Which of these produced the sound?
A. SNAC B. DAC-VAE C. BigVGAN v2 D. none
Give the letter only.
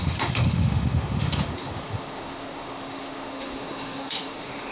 B